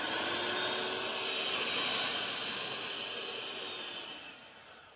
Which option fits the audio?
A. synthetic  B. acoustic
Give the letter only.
B